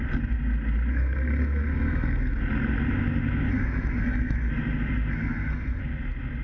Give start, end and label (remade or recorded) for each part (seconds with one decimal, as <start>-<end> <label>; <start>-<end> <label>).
0.0-0.9 recorded; 0.9-2.4 remade; 2.4-3.5 recorded; 3.5-4.5 remade; 4.5-5.1 recorded; 5.1-5.8 remade; 5.8-6.4 recorded